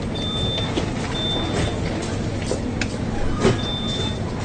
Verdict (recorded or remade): recorded